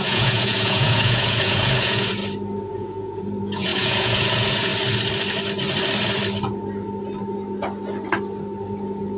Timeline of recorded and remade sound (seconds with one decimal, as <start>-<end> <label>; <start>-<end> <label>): 0.0-2.2 remade; 2.2-2.7 recorded; 2.7-4.7 remade; 4.7-9.2 recorded